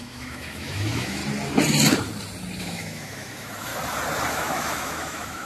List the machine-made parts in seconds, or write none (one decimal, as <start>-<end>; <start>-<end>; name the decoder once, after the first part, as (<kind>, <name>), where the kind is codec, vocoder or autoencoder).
0.0-1.2 (autoencoder, DAC-VAE); 2.6-3.7; 4.3-5.5